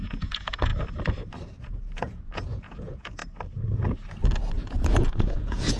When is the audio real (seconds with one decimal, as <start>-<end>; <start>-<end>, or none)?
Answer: 0.7-1.6; 3.2-4.5